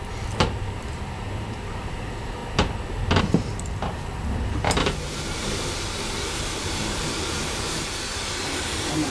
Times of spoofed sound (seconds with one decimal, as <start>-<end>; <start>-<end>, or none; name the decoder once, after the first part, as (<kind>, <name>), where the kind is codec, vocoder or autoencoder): 0.0-2.4 (vocoder, BigVGAN v2); 3.2-9.1